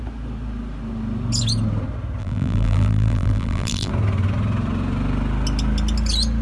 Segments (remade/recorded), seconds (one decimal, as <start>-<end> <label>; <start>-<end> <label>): 0.0-2.2 recorded; 2.2-3.9 remade; 3.9-6.4 recorded